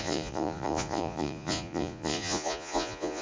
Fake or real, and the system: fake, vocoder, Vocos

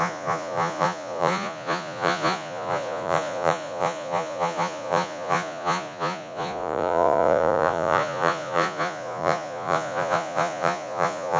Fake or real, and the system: fake, vocoder, Vocos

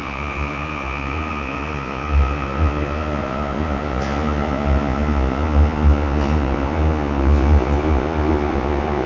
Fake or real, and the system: fake, vocoder, Vocos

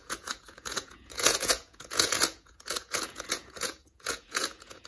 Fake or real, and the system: fake, vocoder, Vocos